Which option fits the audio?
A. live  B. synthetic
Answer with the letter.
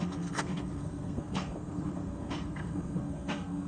B